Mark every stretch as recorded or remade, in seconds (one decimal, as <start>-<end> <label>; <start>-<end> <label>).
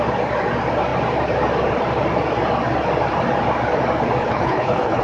0.0-4.2 recorded; 4.2-5.0 remade